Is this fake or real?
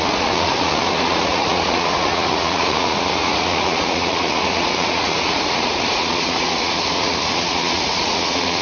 fake